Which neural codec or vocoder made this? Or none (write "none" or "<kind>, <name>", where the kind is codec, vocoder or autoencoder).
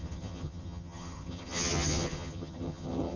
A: vocoder, HiFi-GAN